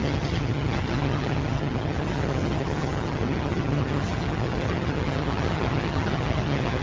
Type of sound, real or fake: fake